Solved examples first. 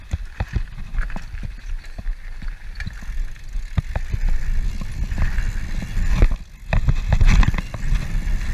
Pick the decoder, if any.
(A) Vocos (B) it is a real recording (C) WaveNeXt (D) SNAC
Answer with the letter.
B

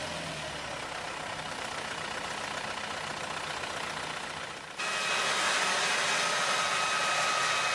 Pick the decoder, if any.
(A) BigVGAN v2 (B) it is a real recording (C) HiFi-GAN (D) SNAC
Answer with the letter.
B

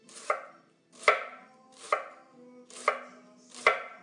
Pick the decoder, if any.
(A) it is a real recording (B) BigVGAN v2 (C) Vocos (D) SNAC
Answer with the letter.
A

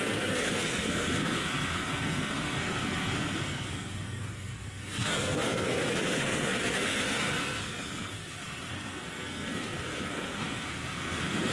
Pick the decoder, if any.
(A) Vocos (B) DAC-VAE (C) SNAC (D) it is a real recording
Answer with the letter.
C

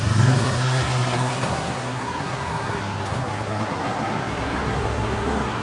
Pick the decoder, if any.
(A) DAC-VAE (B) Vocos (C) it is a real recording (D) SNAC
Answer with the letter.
D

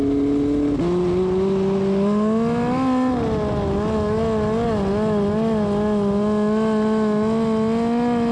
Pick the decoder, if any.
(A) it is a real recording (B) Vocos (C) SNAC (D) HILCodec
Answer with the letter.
A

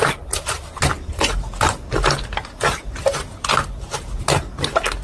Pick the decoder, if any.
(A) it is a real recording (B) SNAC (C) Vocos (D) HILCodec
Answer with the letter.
A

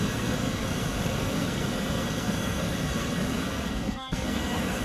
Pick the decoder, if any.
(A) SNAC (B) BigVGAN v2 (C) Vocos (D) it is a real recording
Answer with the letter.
A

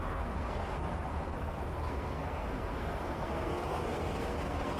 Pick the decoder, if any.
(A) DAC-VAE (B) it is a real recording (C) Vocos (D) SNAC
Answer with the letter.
D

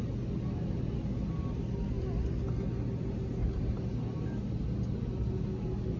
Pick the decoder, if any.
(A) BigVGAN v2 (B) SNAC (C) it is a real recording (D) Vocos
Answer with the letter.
C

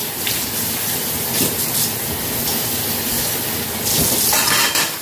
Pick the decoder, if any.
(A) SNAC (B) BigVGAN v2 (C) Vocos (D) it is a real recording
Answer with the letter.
D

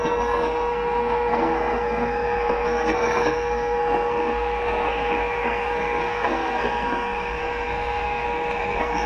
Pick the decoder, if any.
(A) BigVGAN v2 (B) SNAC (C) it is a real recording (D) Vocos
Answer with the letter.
B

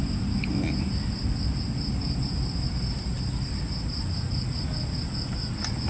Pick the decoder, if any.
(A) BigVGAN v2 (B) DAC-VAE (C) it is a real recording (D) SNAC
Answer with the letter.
C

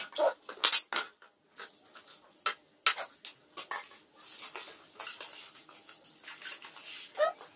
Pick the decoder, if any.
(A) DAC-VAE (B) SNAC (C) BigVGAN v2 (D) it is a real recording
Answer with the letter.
D